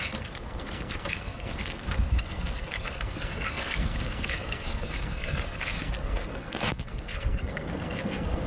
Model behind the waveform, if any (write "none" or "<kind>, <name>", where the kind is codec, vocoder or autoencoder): codec, SNAC